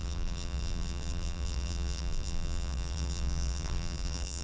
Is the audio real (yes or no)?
no